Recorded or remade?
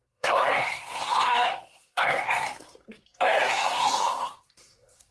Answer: remade